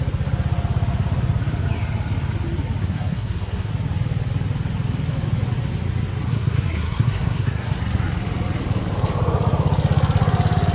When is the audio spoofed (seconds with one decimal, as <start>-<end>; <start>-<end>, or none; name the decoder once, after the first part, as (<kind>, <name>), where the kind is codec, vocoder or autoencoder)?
2.8-3.7 (codec, SNAC); 6.3-7.8